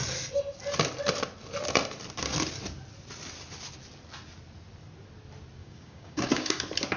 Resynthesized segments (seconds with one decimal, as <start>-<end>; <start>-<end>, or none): 5.6-6.6